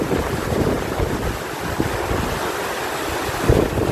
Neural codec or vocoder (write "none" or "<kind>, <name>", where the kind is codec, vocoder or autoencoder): none